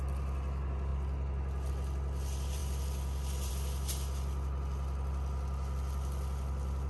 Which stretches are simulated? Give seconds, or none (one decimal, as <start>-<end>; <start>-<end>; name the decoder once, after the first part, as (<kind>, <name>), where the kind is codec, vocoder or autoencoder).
none